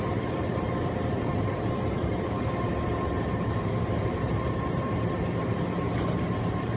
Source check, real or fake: fake